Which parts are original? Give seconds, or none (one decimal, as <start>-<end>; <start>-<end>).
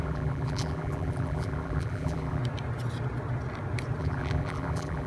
2.4-4.0